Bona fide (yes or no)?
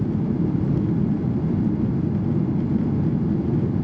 yes